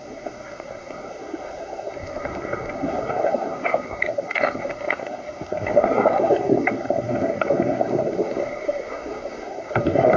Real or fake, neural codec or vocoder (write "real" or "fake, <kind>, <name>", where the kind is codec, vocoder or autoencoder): fake, codec, SNAC